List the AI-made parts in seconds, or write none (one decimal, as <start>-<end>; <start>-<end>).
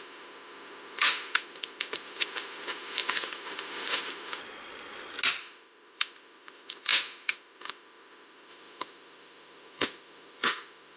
0.0-4.4; 5.4-11.0